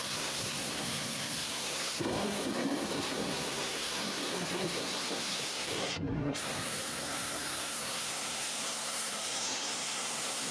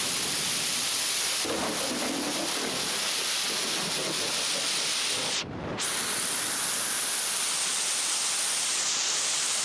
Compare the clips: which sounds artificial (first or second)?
first